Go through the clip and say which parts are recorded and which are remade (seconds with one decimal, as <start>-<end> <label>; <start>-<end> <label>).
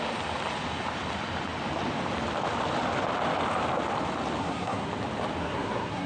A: 0.0-4.4 recorded; 4.4-4.9 remade; 4.9-5.4 recorded; 5.4-6.1 remade